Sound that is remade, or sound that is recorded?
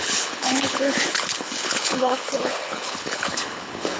remade